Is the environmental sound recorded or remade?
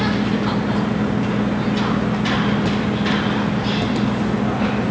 recorded